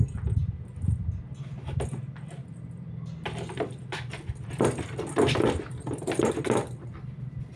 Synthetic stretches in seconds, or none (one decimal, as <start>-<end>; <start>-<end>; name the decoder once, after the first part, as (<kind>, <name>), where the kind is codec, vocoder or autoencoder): 2.4-6.3 (vocoder, BigVGAN v2)

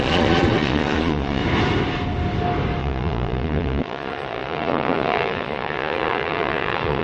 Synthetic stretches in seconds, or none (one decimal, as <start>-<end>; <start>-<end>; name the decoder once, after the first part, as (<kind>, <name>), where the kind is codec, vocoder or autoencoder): 0.0-1.4 (vocoder, Vocos); 2.8-7.0